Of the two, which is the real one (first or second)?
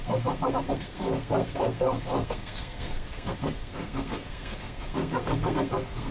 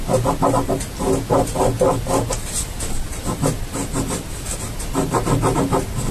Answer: second